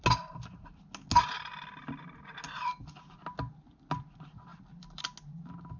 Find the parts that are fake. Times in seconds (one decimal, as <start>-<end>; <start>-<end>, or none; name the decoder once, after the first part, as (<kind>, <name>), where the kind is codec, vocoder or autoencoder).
4.5-5.0 (vocoder, BigVGAN v2)